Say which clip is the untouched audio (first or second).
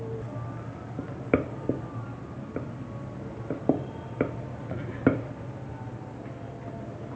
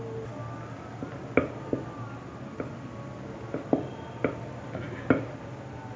second